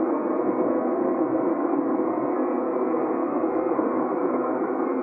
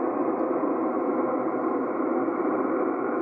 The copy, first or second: first